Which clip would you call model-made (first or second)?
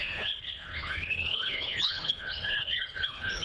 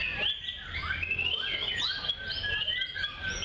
first